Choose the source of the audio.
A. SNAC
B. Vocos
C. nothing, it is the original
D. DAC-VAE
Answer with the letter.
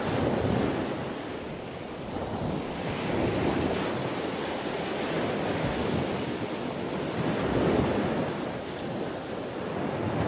C